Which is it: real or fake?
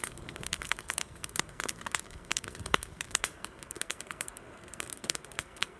fake